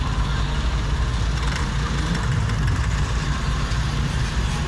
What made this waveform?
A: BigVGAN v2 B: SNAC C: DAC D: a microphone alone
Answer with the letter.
A